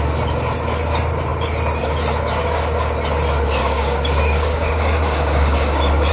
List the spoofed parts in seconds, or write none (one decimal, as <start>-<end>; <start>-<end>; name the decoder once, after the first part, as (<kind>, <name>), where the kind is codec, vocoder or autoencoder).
3.6-6.1 (codec, DAC)